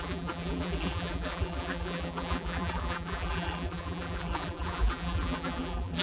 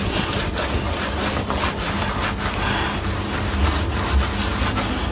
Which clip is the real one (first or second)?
second